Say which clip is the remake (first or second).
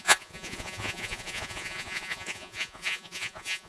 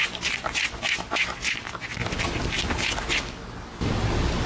first